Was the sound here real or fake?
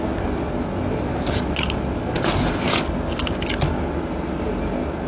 real